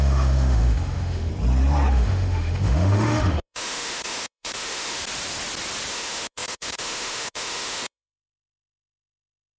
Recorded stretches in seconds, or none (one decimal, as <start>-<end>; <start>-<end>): 1.3-1.9; 5.0-5.9